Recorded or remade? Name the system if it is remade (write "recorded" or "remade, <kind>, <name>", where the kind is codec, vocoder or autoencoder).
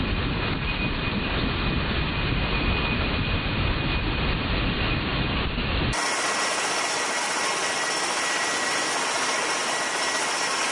recorded